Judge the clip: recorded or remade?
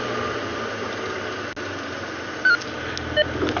recorded